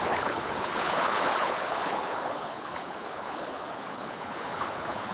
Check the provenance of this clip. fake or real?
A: fake